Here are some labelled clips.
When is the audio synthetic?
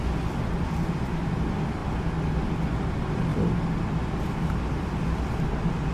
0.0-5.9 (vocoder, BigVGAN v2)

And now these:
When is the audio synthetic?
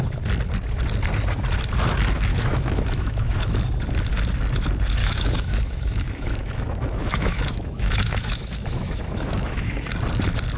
2.3-3.6 (autoencoder, DAC-VAE); 5.0-9.7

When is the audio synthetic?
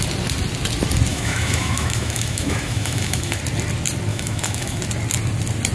1.1-3.4 (autoencoder, DAC-VAE); 4.1-4.8